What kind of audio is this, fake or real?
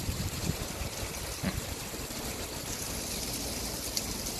real